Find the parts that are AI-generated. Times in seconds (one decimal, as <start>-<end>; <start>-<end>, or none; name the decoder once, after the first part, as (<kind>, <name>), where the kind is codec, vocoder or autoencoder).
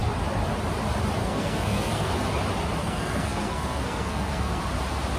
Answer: 1.2-2.1 (codec, SNAC); 2.8-4.6